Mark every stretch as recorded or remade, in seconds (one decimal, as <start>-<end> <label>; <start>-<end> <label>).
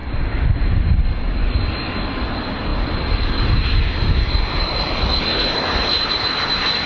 0.0-6.9 recorded